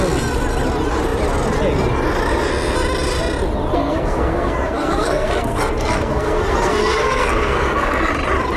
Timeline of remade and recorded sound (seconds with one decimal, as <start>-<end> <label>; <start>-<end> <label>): 0.0-3.7 recorded; 3.7-8.1 remade; 8.1-8.6 recorded